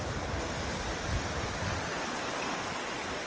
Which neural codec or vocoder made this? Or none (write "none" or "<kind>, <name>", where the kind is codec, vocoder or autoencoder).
none